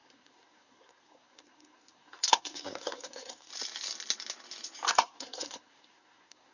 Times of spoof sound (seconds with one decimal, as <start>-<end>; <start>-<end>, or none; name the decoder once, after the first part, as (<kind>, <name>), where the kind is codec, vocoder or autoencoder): 0.0-3.5 (codec, SNAC); 4.9-6.5

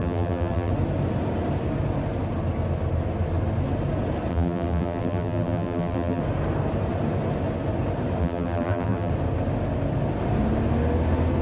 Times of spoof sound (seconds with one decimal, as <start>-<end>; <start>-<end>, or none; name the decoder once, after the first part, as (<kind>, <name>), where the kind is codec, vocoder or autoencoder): 0.0-0.7 (vocoder, BigVGAN v2); 4.3-6.2; 8.2-9.1

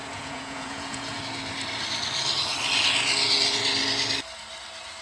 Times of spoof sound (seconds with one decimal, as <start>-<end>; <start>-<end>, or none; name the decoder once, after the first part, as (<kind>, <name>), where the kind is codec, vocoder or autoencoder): 0.0-1.2 (vocoder, Vocos)

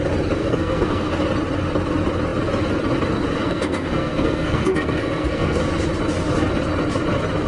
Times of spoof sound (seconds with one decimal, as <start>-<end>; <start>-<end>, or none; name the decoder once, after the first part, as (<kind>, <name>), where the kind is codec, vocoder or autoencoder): 0.4-1.1 (codec, SNAC); 3.4-5.6

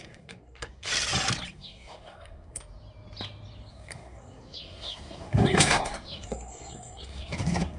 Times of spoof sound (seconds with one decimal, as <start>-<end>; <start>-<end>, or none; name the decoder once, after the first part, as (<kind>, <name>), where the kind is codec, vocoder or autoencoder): 0.0-0.9 (codec, SNAC); 1.5-2.6; 3.7-7.8

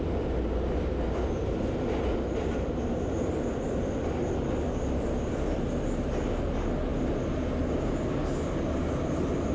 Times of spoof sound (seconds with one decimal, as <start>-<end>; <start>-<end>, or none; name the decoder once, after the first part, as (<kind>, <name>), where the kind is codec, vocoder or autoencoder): none

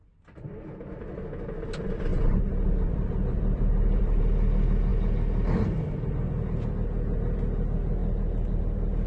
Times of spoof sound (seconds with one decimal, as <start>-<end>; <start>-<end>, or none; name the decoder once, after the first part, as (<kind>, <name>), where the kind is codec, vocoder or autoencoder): 2.1-4.2 (vocoder, BigVGAN v2)